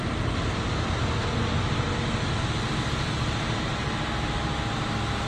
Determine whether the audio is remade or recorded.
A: recorded